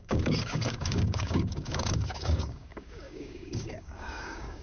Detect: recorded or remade remade